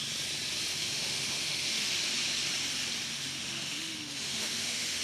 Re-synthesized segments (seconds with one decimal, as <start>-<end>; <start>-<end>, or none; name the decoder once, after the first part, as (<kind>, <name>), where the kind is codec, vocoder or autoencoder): 0.7-2.0 (autoencoder, DAC-VAE); 3.1-5.0